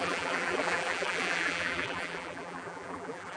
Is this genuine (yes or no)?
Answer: no